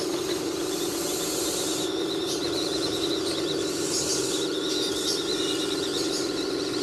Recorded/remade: remade